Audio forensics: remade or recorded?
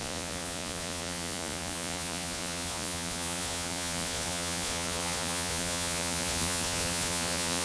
remade